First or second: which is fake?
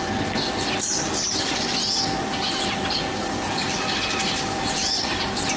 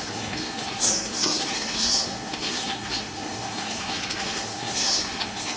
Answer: second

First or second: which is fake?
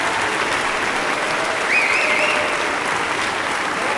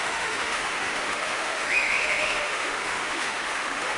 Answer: second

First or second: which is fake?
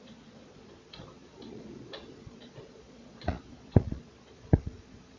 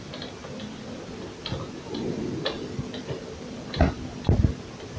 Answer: first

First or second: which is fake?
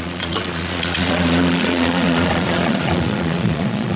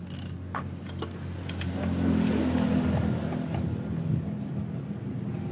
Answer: first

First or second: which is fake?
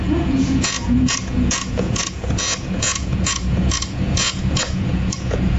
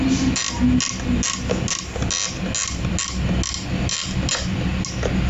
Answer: first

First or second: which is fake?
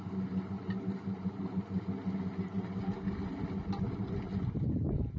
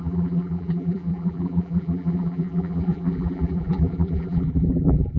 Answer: second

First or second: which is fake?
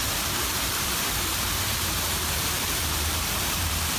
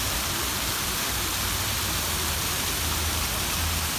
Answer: first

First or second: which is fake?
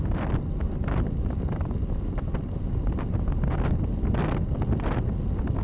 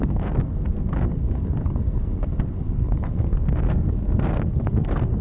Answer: second